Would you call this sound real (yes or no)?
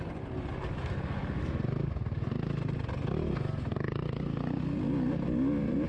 yes